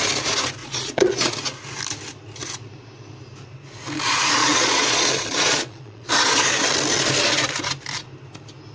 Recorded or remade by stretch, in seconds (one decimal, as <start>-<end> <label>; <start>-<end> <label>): 0.0-0.6 recorded; 0.6-1.3 remade; 1.3-4.4 recorded; 4.4-6.1 remade; 6.1-8.7 recorded